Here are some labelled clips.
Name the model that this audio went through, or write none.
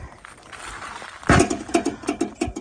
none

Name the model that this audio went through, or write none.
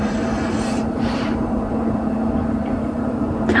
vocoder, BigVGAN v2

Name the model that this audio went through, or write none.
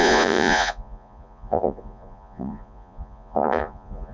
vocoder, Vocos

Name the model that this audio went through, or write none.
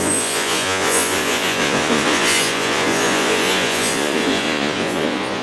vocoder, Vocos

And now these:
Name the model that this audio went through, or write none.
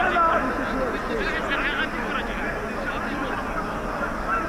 none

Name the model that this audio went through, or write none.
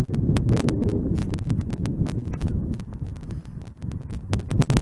none